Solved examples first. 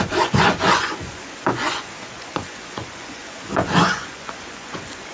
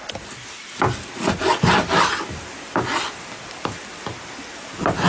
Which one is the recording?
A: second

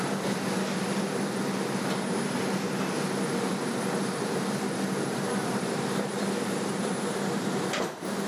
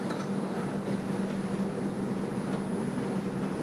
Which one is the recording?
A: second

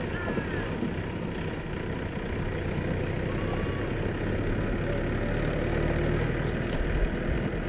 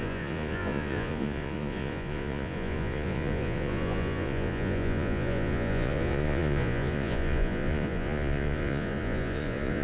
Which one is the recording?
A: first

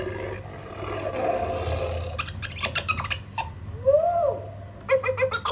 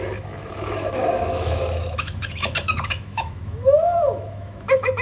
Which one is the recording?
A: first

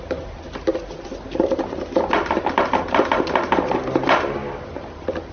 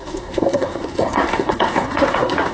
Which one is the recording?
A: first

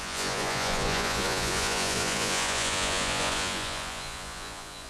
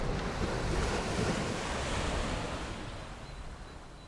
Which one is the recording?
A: second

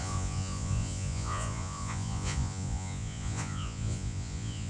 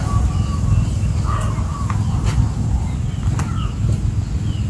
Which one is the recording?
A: second